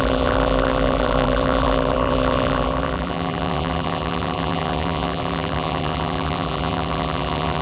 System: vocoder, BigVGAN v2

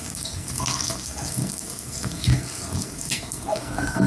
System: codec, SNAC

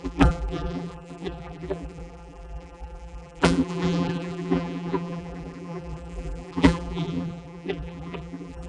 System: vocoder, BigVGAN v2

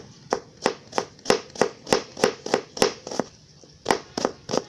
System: none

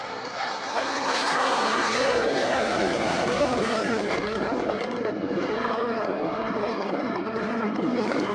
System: codec, SNAC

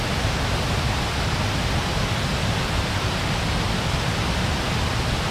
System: none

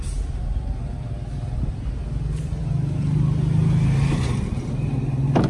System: none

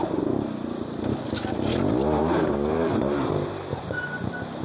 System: vocoder, BigVGAN v2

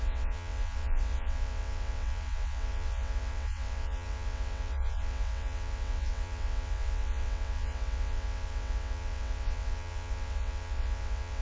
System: vocoder, WaveNeXt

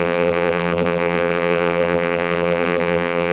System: vocoder, BigVGAN v2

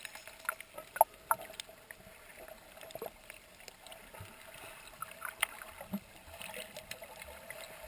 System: none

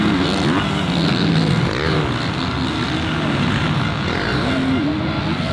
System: none